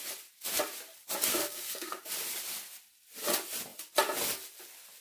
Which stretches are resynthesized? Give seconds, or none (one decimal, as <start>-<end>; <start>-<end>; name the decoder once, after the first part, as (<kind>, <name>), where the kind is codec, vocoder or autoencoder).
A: 1.3-2.0 (codec, SNAC)